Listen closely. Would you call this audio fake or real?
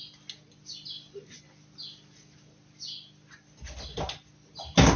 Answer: real